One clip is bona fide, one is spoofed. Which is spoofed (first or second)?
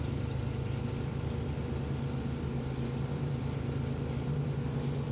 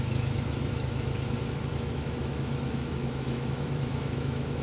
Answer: second